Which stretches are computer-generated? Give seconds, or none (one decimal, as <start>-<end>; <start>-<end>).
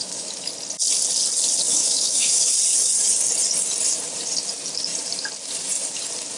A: 0.0-0.5; 1.7-2.5